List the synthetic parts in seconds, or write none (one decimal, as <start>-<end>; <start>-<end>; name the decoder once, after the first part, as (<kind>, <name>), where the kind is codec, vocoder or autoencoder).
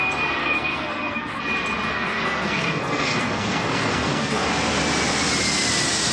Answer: 0.4-1.4 (codec, SNAC); 1.9-4.5